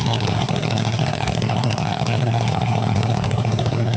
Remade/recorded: remade